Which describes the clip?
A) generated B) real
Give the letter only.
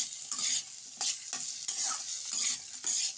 B